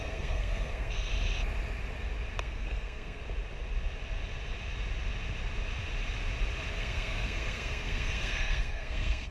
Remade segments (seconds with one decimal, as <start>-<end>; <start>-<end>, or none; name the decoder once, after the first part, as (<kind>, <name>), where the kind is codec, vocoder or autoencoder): 0.0-1.1 (codec, SNAC); 2.4-3.2; 6.7-9.3